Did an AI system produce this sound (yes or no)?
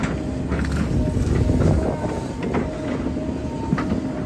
no